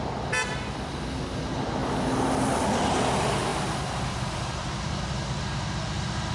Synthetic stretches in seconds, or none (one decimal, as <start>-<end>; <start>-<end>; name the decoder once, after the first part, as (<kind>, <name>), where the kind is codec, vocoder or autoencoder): none